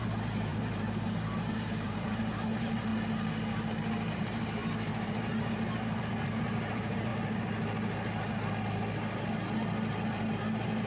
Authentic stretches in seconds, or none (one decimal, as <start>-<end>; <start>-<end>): 2.9-4.1; 7.1-10.2